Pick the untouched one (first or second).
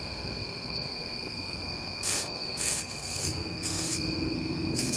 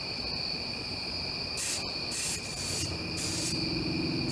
second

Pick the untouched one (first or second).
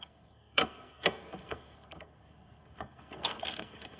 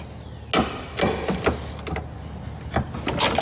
second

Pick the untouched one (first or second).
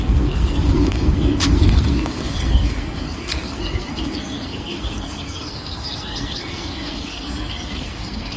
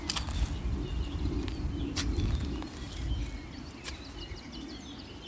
second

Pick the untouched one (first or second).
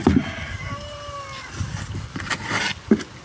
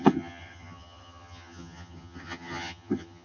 first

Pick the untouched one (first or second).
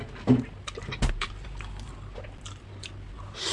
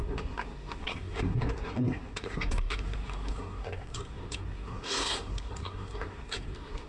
first